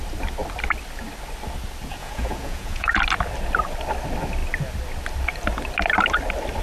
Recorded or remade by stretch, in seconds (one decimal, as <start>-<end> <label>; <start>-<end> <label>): 0.0-2.0 recorded; 2.0-3.0 remade; 3.0-6.6 recorded